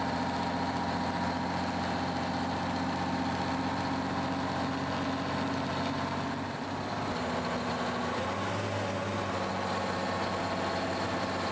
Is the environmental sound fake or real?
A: real